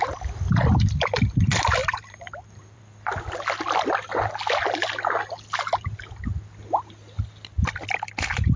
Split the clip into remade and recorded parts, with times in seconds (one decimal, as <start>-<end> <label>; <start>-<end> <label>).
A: 0.0-1.8 recorded; 1.8-2.8 remade; 2.8-8.6 recorded